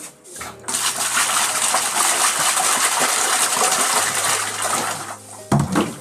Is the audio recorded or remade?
recorded